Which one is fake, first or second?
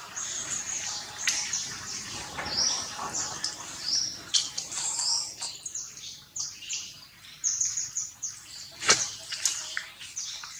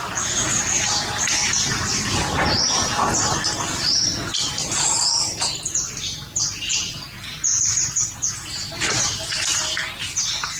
first